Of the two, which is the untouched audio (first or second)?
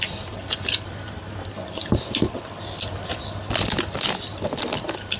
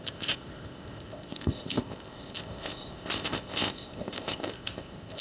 first